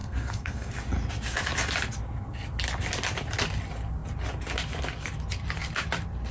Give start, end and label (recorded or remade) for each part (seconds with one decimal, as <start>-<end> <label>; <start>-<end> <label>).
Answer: 0.0-0.7 remade; 0.7-6.3 recorded